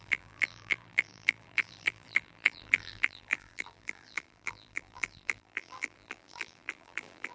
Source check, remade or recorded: remade